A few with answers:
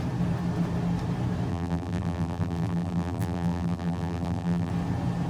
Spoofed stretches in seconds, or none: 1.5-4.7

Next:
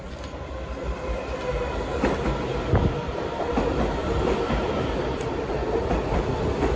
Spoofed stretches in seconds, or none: 0.0-1.9; 2.9-5.6; 6.2-6.8

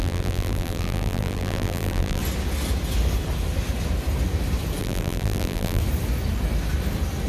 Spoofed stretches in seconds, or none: 0.0-2.2; 4.8-5.8

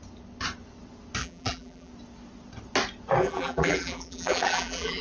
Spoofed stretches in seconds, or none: 1.2-1.9; 3.2-5.0

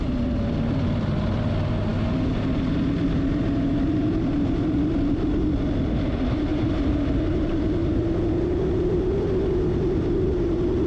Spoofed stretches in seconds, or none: 6.5-7.1

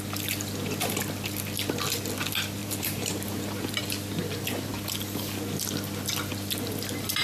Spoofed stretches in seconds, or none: 2.6-3.8